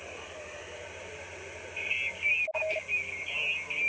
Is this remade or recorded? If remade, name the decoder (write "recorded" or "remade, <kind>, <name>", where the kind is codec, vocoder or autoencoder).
recorded